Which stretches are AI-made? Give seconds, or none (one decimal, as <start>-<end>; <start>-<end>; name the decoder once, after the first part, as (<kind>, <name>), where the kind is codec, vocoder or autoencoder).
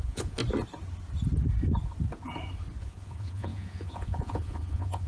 0.0-0.4 (vocoder, Vocos); 2.8-5.1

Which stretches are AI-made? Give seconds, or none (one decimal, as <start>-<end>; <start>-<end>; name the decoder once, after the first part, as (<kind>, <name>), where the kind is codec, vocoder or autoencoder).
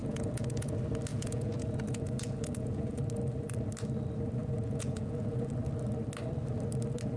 0.0-0.7 (vocoder, Vocos); 1.1-3.0; 4.4-5.5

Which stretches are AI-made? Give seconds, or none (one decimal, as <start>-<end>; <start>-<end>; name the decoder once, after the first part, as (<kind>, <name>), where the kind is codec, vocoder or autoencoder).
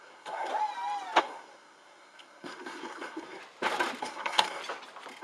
0.0-0.5 (codec, SNAC); 1.2-3.4; 4.0-4.6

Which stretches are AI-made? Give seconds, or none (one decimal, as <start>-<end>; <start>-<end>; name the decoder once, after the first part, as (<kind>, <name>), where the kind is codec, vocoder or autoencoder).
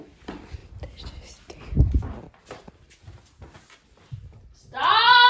0.0-0.6 (vocoder, BigVGAN v2); 2.6-3.0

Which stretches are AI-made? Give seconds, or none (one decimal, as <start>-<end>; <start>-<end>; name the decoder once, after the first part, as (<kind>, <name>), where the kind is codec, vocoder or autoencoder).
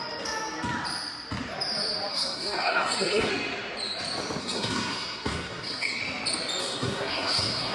2.1-3.3 (codec, SNAC); 4.4-6.0; 6.6-7.7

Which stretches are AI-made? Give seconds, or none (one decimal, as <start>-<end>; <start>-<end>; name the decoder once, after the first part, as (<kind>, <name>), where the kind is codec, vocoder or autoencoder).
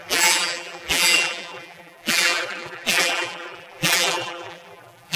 0.0-5.2 (vocoder, BigVGAN v2)